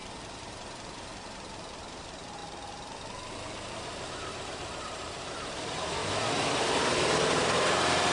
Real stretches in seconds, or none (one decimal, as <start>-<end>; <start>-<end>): 2.4-4.1; 6.0-6.7